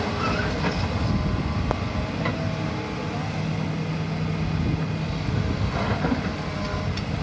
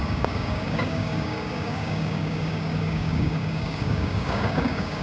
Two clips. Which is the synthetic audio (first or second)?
second